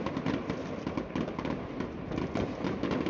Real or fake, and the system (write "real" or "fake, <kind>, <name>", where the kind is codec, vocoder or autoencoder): real